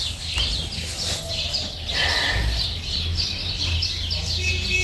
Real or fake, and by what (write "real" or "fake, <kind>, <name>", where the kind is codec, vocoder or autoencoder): real